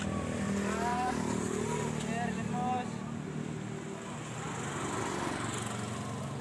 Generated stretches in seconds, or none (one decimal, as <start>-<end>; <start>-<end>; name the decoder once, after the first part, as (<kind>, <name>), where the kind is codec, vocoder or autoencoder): 0.9-1.5 (vocoder, BigVGAN v2)